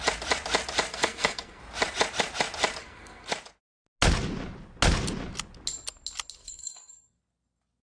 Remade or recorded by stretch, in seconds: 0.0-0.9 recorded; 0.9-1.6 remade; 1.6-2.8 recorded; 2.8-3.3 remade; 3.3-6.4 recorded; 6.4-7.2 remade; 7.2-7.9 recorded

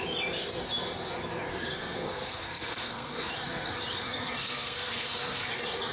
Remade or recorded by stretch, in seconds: 0.0-1.5 recorded; 1.5-3.3 remade; 3.3-4.4 recorded; 4.4-5.5 remade; 5.5-5.9 recorded

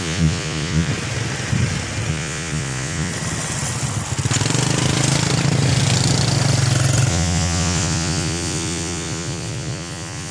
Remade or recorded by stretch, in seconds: 0.0-0.9 remade; 0.9-2.1 recorded; 2.1-3.1 remade; 3.1-7.1 recorded; 7.1-10.3 remade

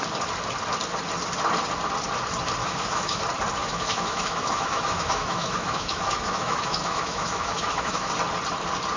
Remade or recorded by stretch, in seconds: 0.0-2.6 recorded; 2.6-3.2 remade; 3.2-3.6 recorded; 3.6-8.1 remade; 8.1-9.0 recorded